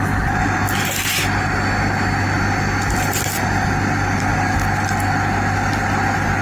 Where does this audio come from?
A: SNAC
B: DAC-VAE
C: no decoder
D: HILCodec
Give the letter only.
C